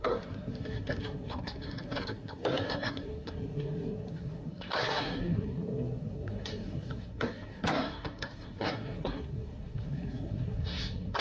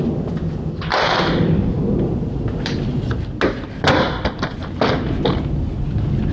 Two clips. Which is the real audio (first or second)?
second